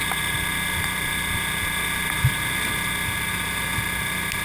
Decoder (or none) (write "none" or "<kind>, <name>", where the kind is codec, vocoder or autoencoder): none